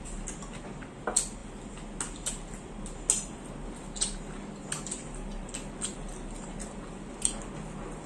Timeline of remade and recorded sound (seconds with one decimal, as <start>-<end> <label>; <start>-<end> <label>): 0.0-8.1 recorded